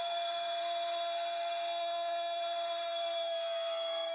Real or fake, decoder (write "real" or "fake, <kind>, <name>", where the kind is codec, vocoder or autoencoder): fake, codec, SNAC